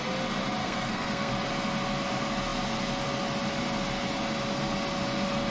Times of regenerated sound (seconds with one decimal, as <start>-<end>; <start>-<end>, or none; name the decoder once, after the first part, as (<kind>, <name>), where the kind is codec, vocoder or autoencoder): 0.6-1.3 (codec, SNAC)